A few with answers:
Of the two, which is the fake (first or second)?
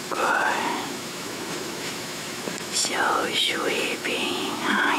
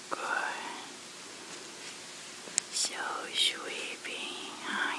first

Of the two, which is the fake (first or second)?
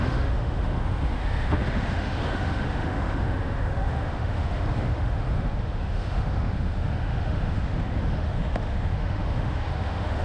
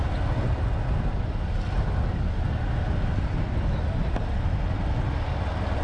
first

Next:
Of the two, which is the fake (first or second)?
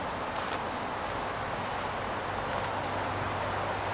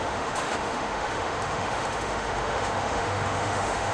second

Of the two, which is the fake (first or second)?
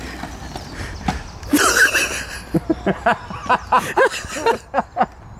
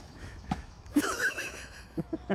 second